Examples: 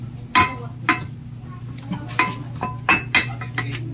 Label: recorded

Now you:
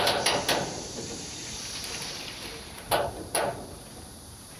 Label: remade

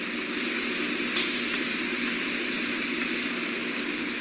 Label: recorded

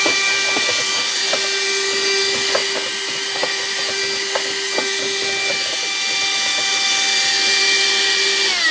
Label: recorded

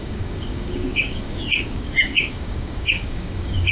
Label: remade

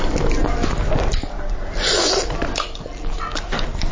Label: recorded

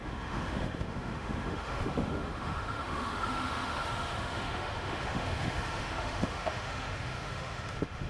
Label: remade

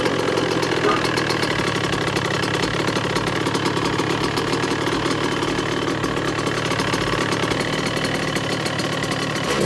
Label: recorded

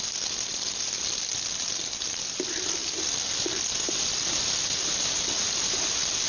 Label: recorded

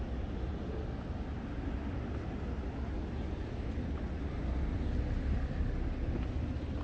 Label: recorded